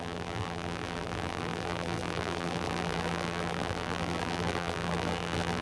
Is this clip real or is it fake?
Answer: fake